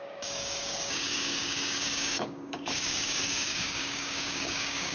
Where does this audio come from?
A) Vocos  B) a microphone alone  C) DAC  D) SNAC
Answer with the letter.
C